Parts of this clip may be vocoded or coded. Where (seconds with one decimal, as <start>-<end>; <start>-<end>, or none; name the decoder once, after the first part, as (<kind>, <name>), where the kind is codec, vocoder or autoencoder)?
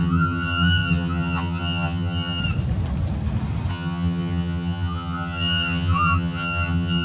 0.0-2.4 (vocoder, HiFi-GAN); 3.7-7.0